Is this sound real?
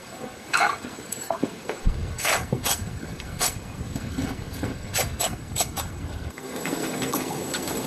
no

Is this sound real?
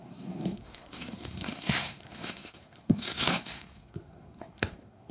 no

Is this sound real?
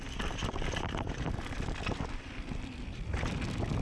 yes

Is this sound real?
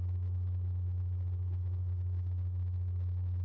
yes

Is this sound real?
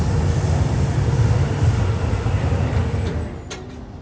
yes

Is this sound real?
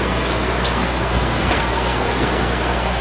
no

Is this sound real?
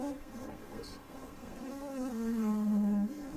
no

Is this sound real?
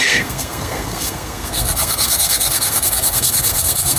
no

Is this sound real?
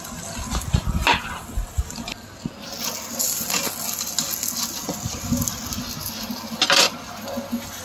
yes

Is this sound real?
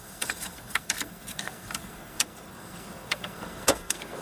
no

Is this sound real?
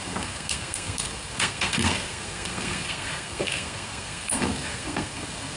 no